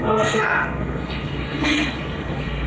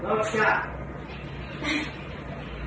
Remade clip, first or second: first